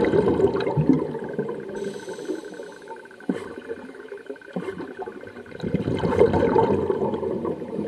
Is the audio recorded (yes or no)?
yes